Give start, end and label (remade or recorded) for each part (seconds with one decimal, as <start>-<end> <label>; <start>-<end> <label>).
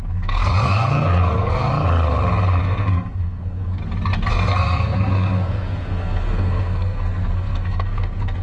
0.0-1.7 remade; 1.7-2.6 recorded; 2.6-3.8 remade; 3.8-4.3 recorded; 4.3-8.4 remade